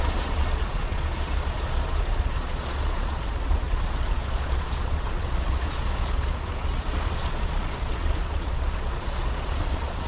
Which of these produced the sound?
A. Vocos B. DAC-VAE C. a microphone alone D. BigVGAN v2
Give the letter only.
A